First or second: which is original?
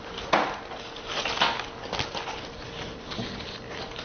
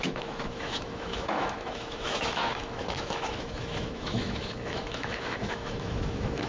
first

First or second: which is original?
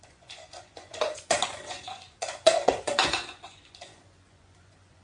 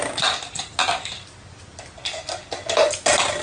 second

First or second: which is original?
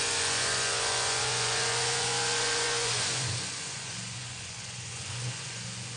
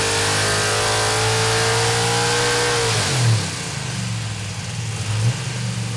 second